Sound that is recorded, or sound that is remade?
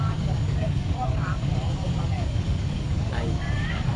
remade